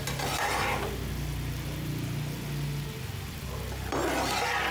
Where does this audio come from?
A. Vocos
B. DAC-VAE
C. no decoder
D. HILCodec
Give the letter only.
C